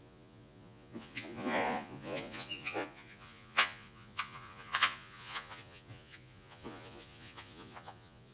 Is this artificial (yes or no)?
yes